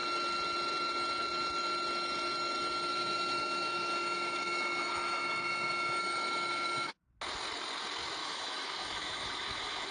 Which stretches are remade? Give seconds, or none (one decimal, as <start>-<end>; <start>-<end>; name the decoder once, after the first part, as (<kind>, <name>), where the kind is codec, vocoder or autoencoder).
2.9-6.9 (autoencoder, DAC-VAE); 8.2-9.9